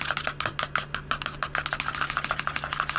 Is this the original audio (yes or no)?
yes